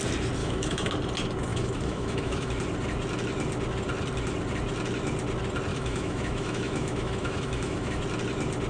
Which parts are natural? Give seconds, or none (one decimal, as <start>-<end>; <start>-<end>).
0.0-0.4; 0.9-1.5; 2.5-5.7; 8.0-8.7